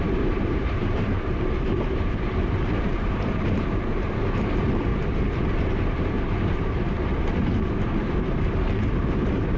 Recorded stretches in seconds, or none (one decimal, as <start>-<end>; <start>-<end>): 4.9-5.6